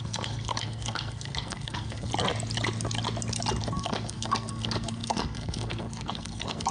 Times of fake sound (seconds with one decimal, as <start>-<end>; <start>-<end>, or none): 0.0-2.1; 3.6-6.7